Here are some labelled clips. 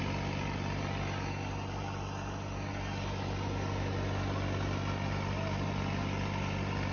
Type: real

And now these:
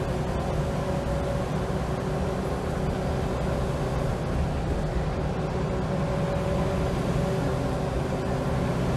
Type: real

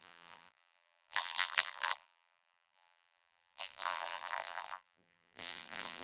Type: fake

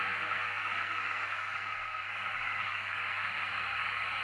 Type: fake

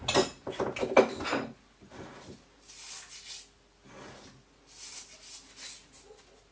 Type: real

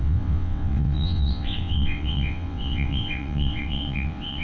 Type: fake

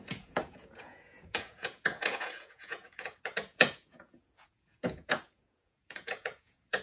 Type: fake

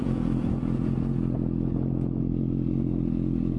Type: fake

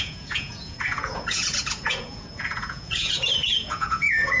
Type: fake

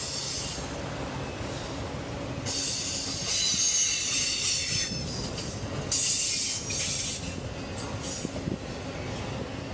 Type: real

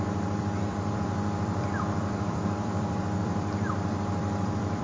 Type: fake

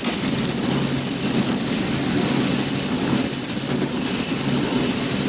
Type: real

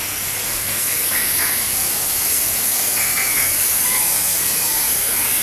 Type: fake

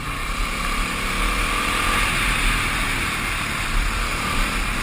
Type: real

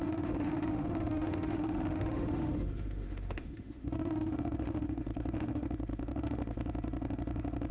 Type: fake